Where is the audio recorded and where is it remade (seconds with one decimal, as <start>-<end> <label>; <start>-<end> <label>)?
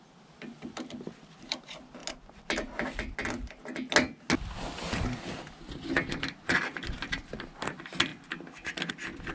0.0-9.3 recorded